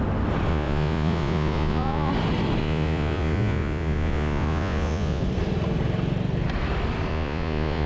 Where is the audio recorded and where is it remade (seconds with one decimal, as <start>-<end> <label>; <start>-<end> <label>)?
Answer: 0.0-0.5 recorded; 0.5-2.1 remade; 2.1-2.6 recorded; 2.6-5.2 remade; 5.2-7.1 recorded; 7.1-7.9 remade